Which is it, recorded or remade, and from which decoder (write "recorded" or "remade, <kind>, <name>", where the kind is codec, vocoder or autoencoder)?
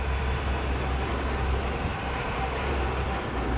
recorded